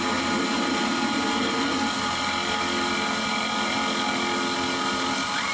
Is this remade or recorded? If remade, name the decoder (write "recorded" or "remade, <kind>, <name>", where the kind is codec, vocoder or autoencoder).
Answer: recorded